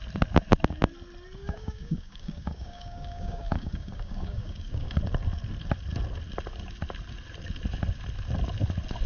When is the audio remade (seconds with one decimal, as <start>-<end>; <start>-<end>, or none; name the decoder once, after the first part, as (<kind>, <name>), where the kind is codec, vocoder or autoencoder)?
1.4-5.0 (codec, DAC)